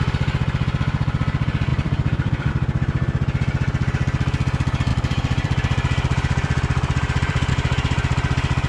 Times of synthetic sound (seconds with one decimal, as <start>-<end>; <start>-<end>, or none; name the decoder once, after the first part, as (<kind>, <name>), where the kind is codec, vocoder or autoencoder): 1.7-2.5 (vocoder, BigVGAN v2); 4.9-7.5